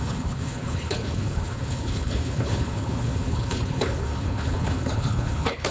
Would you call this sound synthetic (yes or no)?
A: yes